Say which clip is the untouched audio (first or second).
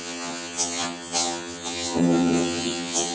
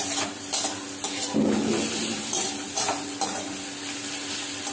second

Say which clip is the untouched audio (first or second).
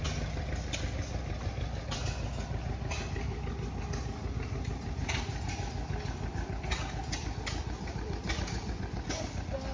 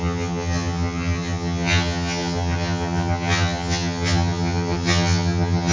first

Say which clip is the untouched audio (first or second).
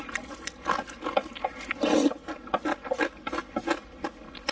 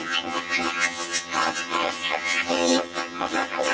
first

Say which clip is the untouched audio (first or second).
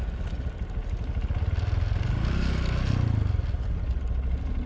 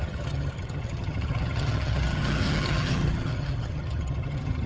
first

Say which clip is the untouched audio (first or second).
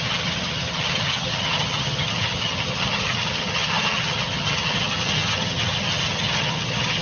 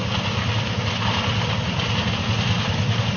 second